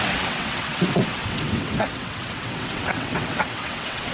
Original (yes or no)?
no